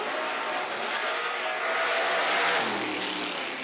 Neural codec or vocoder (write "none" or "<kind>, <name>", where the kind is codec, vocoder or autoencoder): none